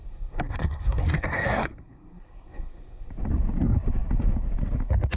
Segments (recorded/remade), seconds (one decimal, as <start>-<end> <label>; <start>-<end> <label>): 0.0-3.1 remade; 3.1-5.2 recorded